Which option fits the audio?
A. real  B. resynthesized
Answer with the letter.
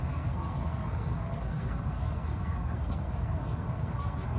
B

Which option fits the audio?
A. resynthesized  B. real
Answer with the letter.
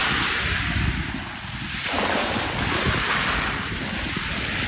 B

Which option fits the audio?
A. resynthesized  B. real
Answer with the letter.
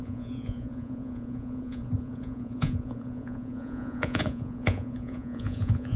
A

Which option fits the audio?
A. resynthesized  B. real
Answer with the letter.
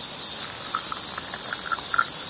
B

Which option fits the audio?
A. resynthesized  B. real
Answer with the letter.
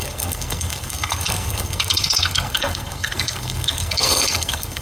A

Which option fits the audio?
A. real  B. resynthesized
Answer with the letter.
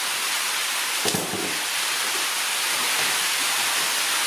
A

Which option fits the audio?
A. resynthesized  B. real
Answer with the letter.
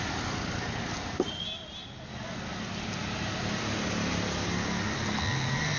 B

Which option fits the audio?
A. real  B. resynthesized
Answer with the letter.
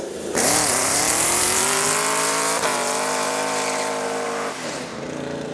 B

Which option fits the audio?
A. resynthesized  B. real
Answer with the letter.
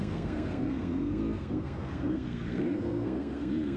A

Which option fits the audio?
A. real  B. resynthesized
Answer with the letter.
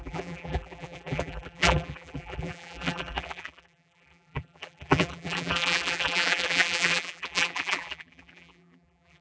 B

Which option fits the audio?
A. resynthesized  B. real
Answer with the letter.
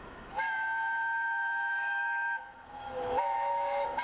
A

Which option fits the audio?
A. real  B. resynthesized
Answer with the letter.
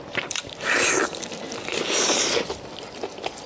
B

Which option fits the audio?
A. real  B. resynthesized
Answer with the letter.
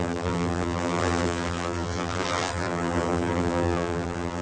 B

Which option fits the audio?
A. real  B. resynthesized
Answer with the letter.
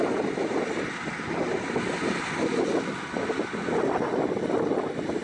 A